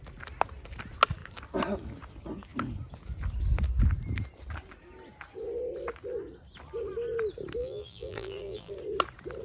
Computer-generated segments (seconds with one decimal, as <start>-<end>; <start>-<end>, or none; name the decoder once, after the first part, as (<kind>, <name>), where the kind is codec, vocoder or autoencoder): 7.6-8.7 (vocoder, BigVGAN v2)